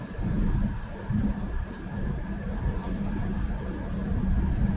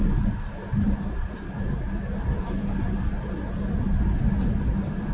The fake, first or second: first